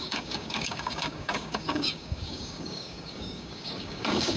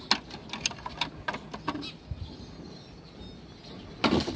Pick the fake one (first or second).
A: first